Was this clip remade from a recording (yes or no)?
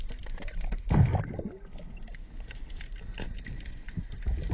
no